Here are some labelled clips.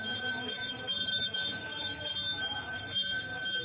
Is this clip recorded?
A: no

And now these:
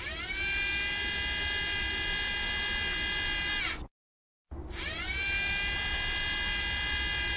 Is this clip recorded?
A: yes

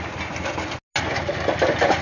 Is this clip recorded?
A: yes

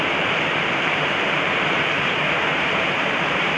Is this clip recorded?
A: no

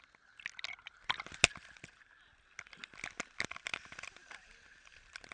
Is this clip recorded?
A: yes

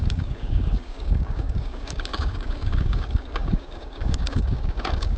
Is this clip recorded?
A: no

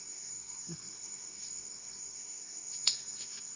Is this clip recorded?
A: no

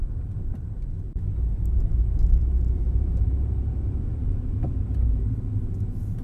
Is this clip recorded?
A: no